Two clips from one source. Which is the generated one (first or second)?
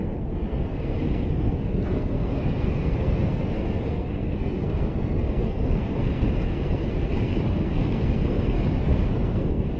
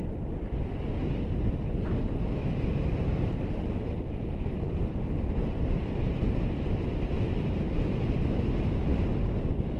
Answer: first